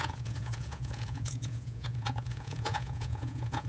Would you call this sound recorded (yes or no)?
no